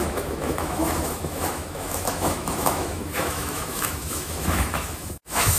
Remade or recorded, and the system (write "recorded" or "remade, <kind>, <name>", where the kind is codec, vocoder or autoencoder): remade, autoencoder, DAC-VAE